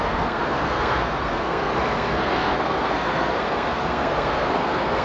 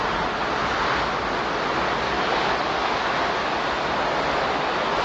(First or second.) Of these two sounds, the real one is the second